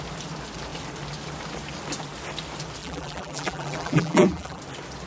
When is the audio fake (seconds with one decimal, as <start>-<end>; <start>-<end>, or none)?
2.8-4.6